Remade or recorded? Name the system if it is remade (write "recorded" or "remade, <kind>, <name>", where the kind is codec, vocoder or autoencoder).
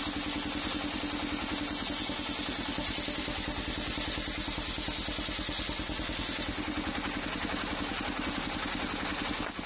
recorded